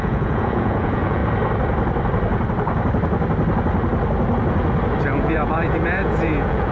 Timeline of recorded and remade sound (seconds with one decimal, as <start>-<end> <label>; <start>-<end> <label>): 0.0-1.2 remade; 1.2-5.2 recorded; 5.2-6.7 remade